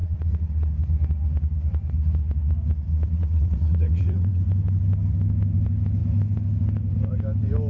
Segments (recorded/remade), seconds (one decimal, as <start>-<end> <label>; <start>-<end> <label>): 0.0-0.7 remade; 0.7-2.9 recorded; 2.9-4.4 remade; 4.4-7.7 recorded